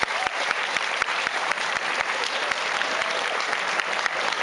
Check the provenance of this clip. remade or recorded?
remade